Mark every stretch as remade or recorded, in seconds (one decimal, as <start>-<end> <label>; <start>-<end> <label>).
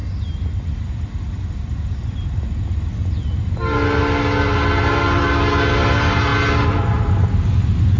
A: 0.0-8.0 recorded